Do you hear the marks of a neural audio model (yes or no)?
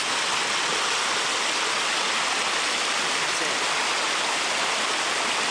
no